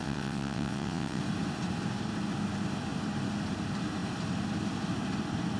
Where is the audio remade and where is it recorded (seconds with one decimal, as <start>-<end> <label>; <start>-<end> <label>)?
0.0-1.2 remade; 1.2-5.6 recorded